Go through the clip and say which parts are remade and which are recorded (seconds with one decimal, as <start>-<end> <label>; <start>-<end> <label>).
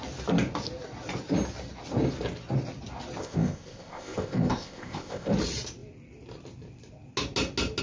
0.0-3.2 recorded; 3.2-5.3 remade; 5.3-7.8 recorded